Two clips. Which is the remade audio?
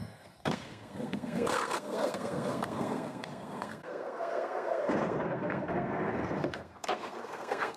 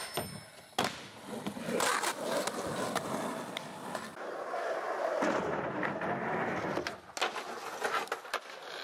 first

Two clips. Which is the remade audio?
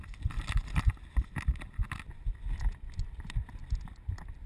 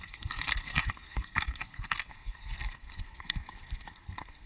second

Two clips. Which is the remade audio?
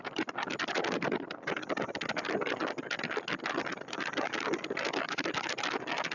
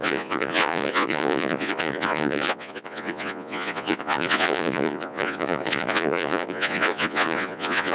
second